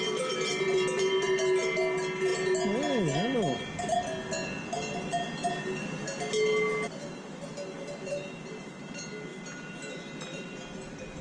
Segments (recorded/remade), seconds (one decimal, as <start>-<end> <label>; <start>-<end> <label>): 0.0-11.2 recorded